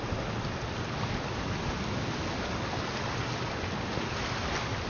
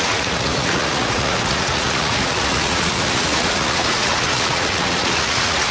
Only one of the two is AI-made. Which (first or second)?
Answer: second